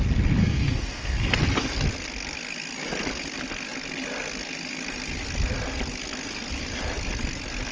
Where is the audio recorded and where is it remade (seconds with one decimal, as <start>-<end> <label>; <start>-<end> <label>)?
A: 0.0-0.4 recorded; 0.4-1.3 remade; 1.3-7.7 recorded